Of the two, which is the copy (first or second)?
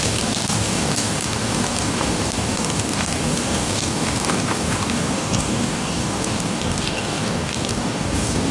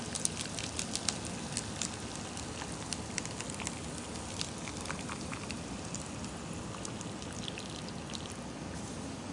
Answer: first